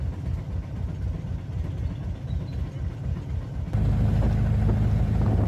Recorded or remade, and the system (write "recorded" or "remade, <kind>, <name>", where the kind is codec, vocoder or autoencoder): recorded